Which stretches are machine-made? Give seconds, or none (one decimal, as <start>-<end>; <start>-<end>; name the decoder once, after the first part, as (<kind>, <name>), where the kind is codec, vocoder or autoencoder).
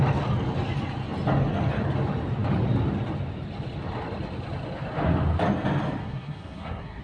6.0-7.0 (codec, SNAC)